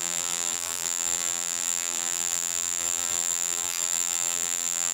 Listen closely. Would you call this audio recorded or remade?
remade